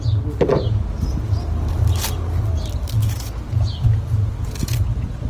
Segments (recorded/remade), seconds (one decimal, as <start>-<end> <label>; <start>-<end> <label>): 0.0-3.0 recorded; 3.0-5.3 remade